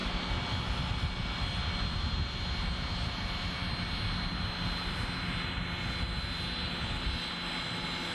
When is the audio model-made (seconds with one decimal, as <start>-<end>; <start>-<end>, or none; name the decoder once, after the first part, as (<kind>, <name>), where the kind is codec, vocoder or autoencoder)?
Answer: none